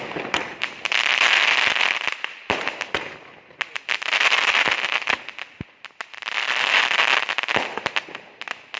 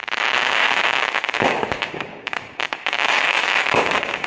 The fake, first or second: second